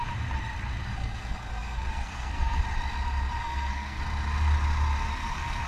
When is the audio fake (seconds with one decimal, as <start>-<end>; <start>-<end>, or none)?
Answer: 1.0-2.6; 3.4-4.0; 5.1-5.7